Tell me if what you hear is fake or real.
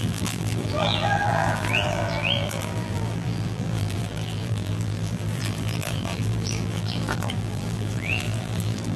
fake